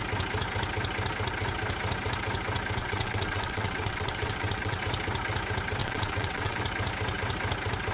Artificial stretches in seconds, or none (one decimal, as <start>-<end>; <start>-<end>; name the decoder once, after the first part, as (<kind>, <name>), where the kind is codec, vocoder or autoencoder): 2.8-4.8 (vocoder, WaveNeXt); 5.8-6.6